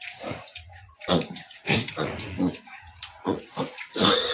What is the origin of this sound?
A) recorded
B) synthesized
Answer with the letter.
B